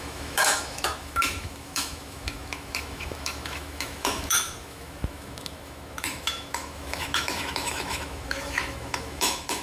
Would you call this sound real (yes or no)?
no